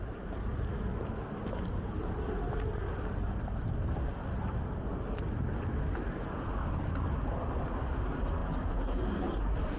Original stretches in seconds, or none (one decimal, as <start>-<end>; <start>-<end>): 0.0-9.8